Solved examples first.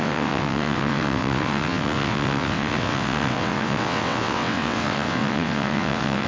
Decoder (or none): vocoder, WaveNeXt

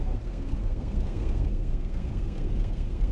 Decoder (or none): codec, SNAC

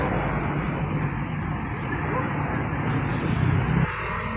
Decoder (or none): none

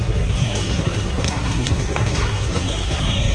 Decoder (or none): codec, SNAC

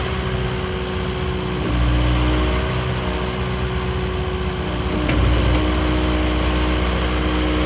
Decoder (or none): none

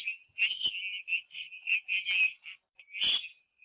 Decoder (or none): none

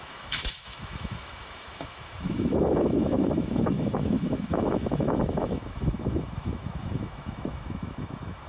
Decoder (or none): autoencoder, DAC-VAE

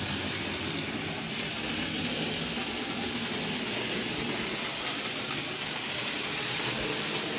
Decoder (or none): none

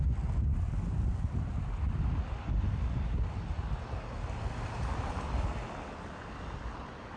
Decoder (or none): none